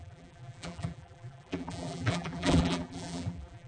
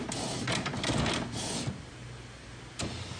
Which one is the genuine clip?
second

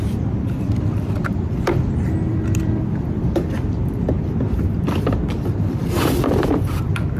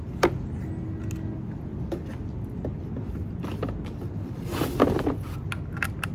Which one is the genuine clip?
second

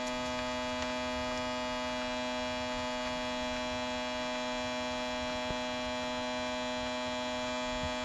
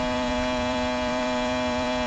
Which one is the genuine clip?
first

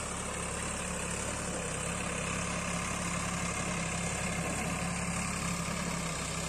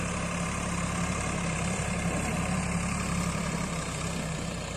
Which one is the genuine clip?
first